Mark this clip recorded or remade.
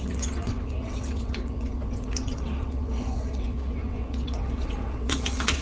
remade